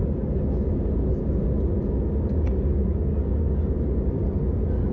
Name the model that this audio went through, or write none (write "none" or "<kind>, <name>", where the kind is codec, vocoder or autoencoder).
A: none